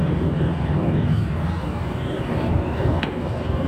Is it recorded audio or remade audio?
remade